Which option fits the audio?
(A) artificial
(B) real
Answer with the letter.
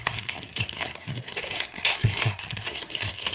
A